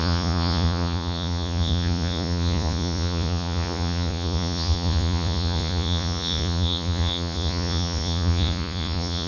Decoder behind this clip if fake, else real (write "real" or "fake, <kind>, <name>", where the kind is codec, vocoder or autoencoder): fake, vocoder, Vocos